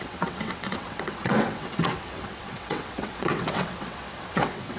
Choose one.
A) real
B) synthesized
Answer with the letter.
B